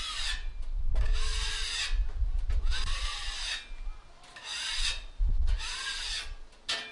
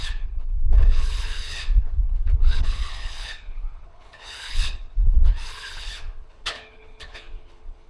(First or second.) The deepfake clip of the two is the second